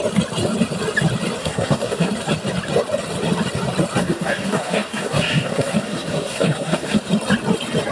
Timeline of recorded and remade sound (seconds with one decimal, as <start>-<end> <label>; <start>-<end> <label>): 0.0-1.4 recorded; 1.4-2.1 remade; 2.1-4.0 recorded; 4.0-7.0 remade; 7.0-7.9 recorded

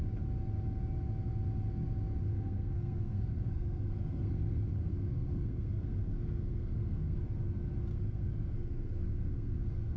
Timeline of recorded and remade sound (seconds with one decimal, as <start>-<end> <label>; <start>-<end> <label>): 0.0-2.3 recorded; 2.3-7.2 remade; 7.2-7.9 recorded; 7.9-10.0 remade

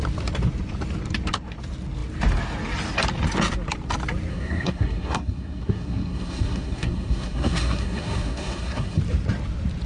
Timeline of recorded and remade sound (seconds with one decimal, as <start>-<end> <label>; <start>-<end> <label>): 0.0-4.3 recorded; 4.3-9.0 remade; 9.0-9.9 recorded

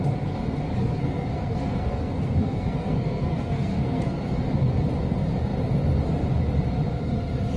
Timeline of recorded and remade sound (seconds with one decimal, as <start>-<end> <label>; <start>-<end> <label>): 0.0-0.8 recorded; 0.8-4.4 remade; 4.4-7.6 recorded

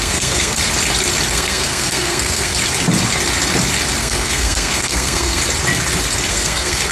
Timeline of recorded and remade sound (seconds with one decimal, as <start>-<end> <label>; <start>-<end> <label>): 0.0-0.6 remade; 0.6-1.3 recorded; 1.3-2.5 remade; 2.5-4.0 recorded; 4.0-5.4 remade; 5.4-6.3 recorded; 6.3-6.9 remade

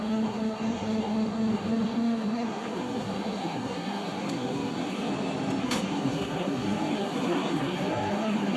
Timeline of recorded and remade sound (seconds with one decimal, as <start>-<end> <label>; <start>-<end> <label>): 0.0-5.1 remade; 5.1-5.6 recorded; 5.6-8.6 remade

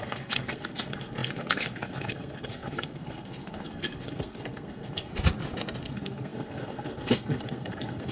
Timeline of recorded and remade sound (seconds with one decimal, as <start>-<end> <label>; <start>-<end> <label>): 0.0-5.1 remade; 5.1-5.8 recorded; 5.8-8.1 remade